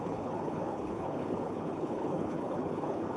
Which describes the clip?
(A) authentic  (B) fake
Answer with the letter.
B